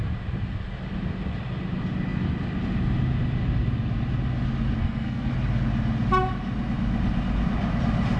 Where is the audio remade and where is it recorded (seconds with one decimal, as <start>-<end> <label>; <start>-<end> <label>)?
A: 0.0-4.8 recorded; 4.8-5.3 remade; 5.3-8.2 recorded